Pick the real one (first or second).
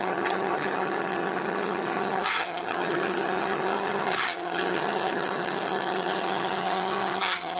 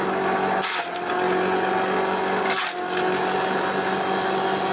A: second